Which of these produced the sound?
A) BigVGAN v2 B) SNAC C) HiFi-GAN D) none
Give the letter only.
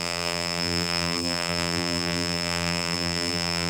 A